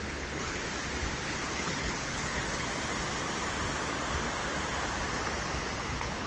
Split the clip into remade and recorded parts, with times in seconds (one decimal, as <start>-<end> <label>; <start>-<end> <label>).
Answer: 0.0-0.6 remade; 0.6-1.2 recorded; 1.2-2.7 remade; 2.7-5.8 recorded; 5.8-6.3 remade